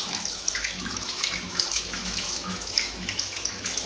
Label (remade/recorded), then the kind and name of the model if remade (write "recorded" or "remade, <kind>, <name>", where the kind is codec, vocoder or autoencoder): remade, autoencoder, DAC-VAE